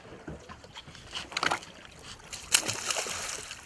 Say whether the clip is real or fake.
real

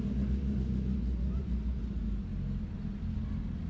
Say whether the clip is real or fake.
real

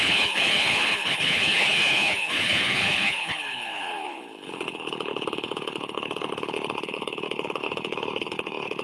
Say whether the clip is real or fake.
fake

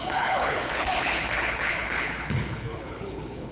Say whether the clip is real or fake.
fake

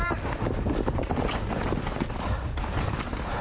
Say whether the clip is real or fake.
real